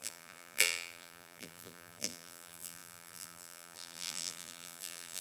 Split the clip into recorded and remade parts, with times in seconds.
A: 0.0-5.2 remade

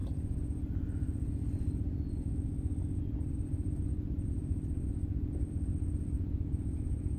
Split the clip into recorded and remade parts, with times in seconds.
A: 0.0-7.2 recorded